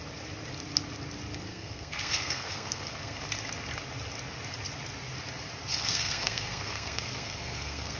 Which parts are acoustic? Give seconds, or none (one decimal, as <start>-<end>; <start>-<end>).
0.0-1.5; 3.2-5.7

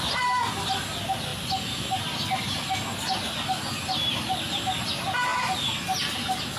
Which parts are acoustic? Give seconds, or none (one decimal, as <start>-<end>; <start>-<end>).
0.0-6.6

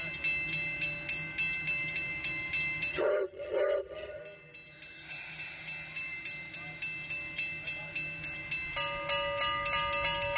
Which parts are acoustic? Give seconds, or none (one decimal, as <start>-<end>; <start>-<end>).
0.0-2.9; 4.2-10.4

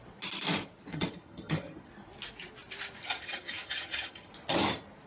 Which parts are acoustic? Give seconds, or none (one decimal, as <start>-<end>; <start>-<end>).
0.0-0.9; 1.9-3.0; 4.3-5.1

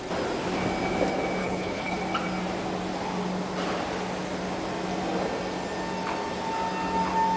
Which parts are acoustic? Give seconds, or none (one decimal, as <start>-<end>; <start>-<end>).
0.0-1.4; 2.0-7.4

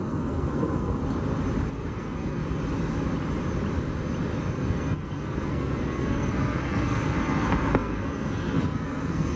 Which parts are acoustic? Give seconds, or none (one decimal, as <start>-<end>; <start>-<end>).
1.0-1.7; 2.4-4.5

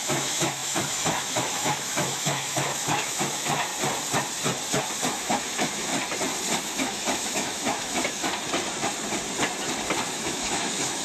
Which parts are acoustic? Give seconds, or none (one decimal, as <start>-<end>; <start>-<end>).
3.7-5.1; 5.9-6.6; 8.3-10.1